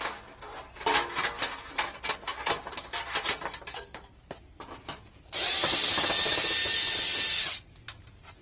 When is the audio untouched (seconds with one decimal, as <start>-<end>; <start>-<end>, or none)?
0.0-8.4